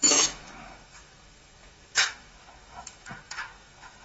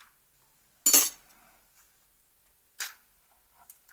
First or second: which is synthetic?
first